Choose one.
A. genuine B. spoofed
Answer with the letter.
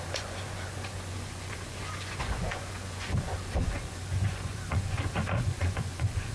B